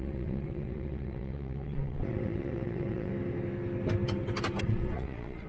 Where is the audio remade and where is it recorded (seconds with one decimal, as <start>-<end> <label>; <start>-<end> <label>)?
0.0-3.1 remade; 3.1-4.6 recorded; 4.6-5.5 remade